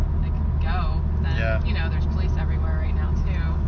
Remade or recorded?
recorded